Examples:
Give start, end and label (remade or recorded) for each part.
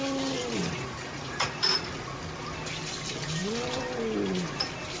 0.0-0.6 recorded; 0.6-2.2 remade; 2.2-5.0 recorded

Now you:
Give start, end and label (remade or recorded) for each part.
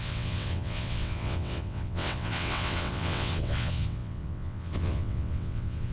0.0-5.9 remade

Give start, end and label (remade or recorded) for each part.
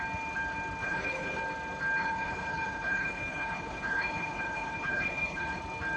0.0-0.8 recorded; 0.8-1.4 remade; 1.4-2.0 recorded; 2.0-5.6 remade; 5.6-6.0 recorded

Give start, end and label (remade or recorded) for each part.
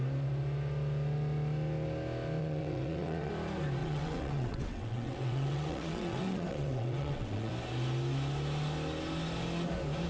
0.0-2.4 recorded; 2.4-3.3 remade; 3.3-3.8 recorded; 3.8-7.5 remade; 7.5-10.1 recorded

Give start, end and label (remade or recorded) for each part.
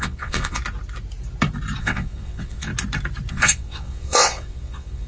0.0-0.6 remade; 0.6-1.8 recorded; 1.8-2.7 remade; 2.7-3.3 recorded; 3.3-5.1 remade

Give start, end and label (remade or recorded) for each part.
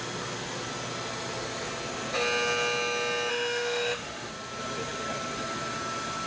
0.0-3.3 recorded; 3.3-4.3 remade; 4.3-6.3 recorded